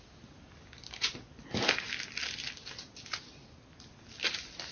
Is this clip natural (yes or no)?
yes